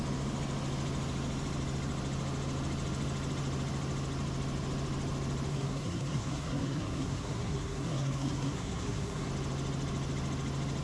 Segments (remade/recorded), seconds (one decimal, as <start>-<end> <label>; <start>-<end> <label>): 0.0-5.5 recorded; 5.5-9.3 remade; 9.3-10.8 recorded